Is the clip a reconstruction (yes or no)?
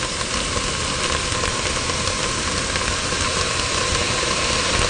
no